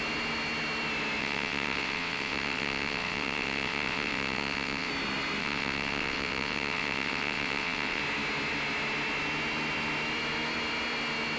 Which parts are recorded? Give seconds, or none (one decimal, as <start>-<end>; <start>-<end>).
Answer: 0.0-1.2; 4.9-5.4; 8.0-11.4